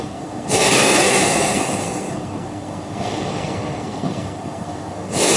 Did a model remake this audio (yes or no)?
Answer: yes